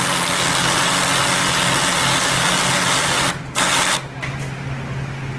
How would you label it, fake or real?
real